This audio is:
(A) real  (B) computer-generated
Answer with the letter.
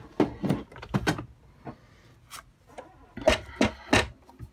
A